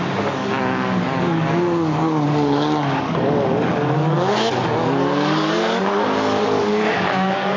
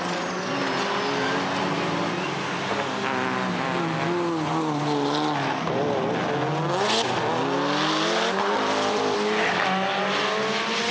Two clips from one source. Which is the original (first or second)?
second